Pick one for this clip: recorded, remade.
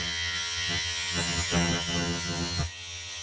remade